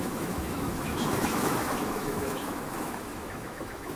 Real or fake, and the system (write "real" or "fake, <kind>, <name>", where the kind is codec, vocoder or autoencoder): fake, autoencoder, DAC-VAE